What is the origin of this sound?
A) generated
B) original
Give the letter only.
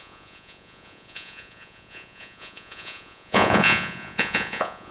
A